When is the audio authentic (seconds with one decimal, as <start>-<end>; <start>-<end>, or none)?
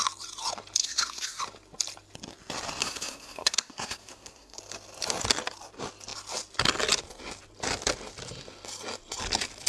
0.0-0.8; 1.4-2.8; 4.6-9.7